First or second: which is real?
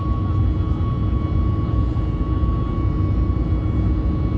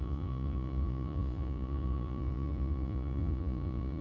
first